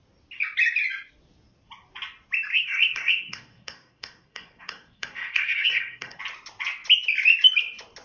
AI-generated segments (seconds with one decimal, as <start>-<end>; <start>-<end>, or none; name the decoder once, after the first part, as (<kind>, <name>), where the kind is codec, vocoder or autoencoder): 2.5-6.2 (codec, SNAC)

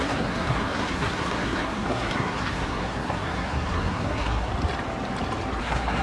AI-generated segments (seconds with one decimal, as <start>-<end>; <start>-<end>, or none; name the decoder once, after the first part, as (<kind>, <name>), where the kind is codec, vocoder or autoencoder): 0.0-4.5 (codec, SNAC); 5.6-6.0